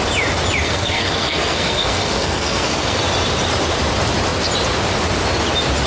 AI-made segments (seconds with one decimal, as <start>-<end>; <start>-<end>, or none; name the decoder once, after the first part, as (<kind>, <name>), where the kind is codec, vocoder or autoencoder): 0.6-3.0 (codec, SNAC)